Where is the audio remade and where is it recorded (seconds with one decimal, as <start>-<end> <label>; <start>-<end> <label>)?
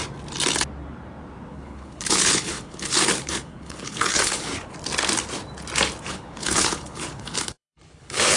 0.0-1.5 recorded; 1.5-4.5 remade; 4.5-6.1 recorded; 6.1-8.4 remade